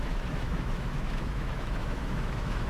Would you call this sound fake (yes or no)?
yes